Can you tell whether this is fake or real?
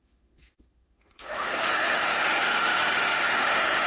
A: fake